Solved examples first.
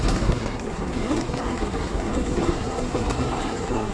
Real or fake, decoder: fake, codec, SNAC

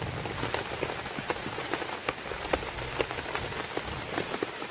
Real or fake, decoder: real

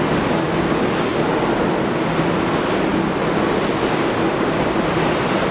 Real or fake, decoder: real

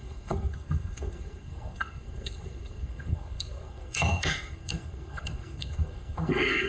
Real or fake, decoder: fake, codec, SNAC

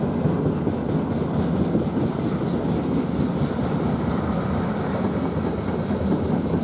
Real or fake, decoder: real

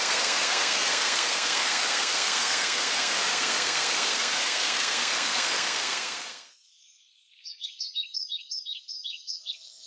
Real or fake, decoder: fake, codec, SNAC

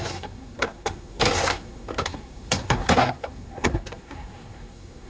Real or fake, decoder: fake, codec, SNAC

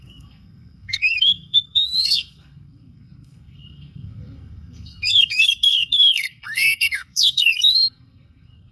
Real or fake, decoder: fake, codec, SNAC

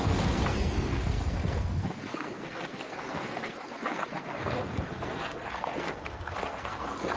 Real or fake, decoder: fake, codec, SNAC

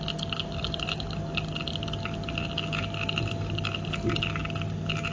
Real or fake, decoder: real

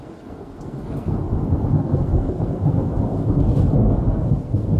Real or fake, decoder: fake, codec, SNAC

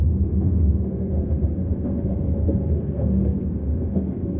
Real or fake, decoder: fake, codec, SNAC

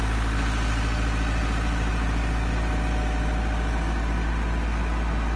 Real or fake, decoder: real